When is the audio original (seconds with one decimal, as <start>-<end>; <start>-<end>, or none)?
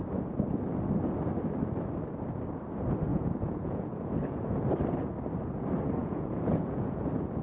0.0-3.1; 4.6-6.0; 7.0-7.4